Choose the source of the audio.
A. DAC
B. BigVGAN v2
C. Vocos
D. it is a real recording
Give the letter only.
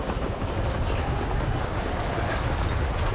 D